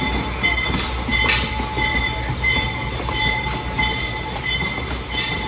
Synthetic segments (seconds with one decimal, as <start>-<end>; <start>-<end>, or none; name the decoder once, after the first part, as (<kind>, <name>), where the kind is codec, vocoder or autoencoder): none